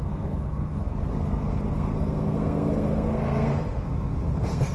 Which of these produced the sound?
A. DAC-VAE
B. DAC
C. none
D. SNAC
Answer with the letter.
D